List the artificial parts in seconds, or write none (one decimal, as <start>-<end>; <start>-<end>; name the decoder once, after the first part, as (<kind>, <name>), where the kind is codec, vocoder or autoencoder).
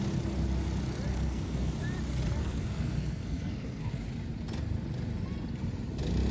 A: 1.1-1.7 (codec, SNAC); 2.4-3.9